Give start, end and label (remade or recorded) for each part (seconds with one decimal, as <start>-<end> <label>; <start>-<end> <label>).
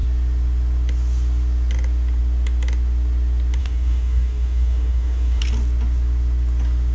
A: 0.0-3.6 recorded; 3.6-5.4 remade; 5.4-6.9 recorded